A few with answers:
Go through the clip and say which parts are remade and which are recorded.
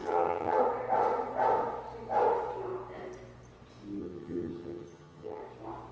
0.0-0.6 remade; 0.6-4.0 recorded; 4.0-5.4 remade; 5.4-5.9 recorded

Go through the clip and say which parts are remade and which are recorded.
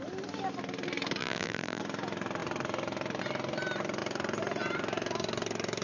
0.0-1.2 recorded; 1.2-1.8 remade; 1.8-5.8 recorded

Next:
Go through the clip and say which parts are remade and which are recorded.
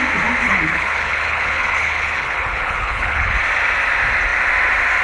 0.0-0.4 recorded; 0.4-3.4 remade; 3.4-5.0 recorded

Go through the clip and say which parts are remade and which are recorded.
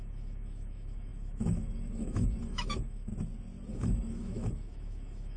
0.0-3.1 remade; 3.1-3.7 recorded; 3.7-5.4 remade